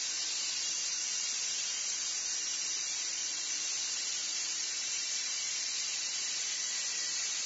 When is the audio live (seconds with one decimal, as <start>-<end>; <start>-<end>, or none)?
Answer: 0.0-0.8; 1.8-3.2; 3.9-4.3; 6.4-7.5